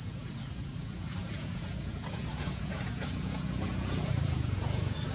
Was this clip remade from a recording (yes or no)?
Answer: yes